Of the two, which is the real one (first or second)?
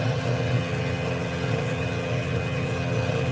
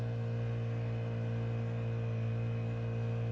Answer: second